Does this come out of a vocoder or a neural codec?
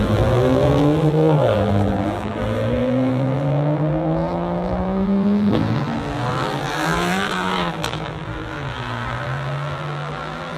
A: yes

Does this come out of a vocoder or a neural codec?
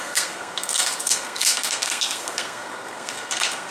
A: yes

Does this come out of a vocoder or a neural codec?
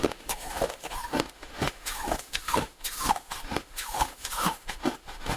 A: yes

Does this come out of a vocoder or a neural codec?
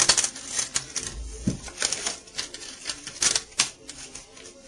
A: yes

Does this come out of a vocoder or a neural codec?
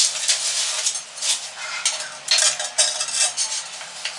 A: no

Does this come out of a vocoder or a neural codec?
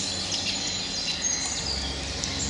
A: no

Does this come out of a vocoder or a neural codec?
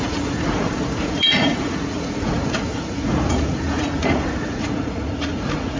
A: yes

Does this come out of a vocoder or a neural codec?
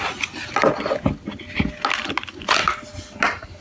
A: no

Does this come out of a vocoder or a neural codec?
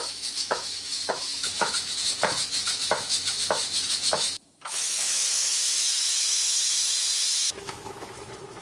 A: yes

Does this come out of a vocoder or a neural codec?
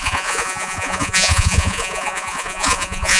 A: yes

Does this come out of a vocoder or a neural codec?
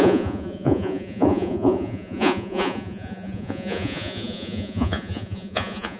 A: yes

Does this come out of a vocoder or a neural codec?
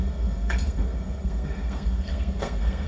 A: yes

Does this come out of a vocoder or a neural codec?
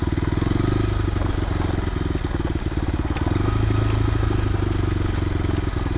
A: no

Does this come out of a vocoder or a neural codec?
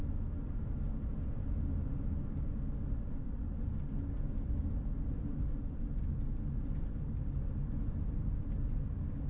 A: no